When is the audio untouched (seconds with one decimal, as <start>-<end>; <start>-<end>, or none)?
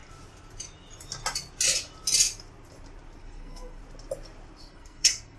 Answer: 0.0-3.2; 3.8-4.6